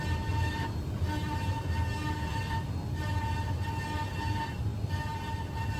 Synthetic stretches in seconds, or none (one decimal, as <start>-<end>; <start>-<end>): none